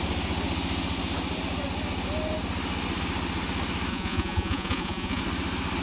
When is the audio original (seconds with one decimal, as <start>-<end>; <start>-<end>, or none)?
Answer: 0.0-3.9; 5.2-5.8